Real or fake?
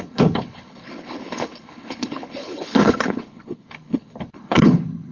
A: fake